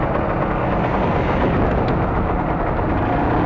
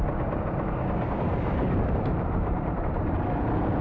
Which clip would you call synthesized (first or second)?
second